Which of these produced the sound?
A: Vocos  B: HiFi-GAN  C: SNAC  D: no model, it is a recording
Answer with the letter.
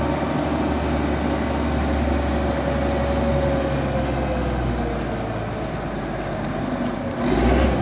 D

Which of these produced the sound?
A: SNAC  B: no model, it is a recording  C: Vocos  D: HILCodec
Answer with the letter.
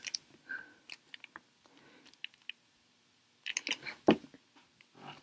B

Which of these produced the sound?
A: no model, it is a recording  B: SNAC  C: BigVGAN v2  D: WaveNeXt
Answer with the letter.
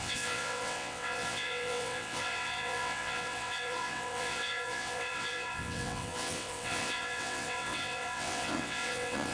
D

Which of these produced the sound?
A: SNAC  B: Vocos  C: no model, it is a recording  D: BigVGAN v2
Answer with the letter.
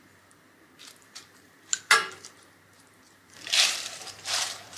D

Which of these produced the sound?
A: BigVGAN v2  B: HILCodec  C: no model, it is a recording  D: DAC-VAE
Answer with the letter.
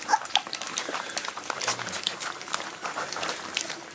A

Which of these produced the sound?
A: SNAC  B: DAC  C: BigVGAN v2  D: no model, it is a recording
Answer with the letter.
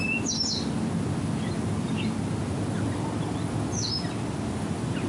D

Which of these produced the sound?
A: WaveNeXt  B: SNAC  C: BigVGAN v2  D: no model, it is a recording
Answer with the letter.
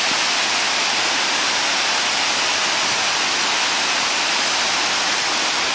D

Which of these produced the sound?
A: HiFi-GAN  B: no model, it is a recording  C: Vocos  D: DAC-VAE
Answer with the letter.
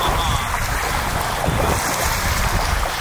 B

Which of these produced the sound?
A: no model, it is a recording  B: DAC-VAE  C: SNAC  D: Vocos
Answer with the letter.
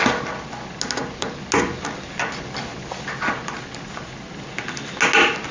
A